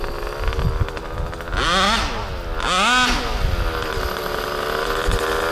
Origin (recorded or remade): recorded